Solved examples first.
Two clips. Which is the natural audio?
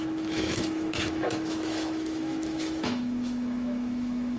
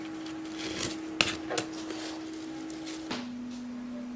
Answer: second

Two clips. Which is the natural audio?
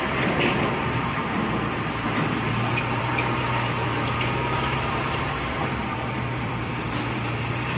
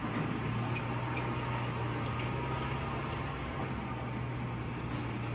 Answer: second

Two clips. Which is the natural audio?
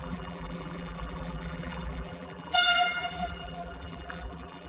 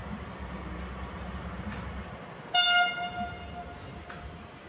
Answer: second